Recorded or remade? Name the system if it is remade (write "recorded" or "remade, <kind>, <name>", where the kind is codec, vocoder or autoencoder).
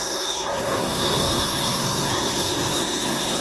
remade, codec, SNAC